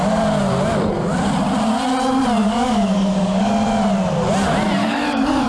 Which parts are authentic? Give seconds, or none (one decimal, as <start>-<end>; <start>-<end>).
0.0-2.4; 3.5-4.8